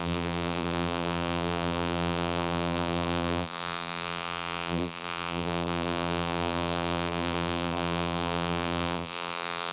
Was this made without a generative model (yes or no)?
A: no